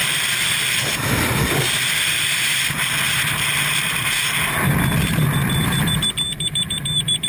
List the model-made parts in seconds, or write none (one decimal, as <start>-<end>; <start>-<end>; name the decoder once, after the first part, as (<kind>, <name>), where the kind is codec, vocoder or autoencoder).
0.0-0.6 (vocoder, BigVGAN v2); 5.4-7.3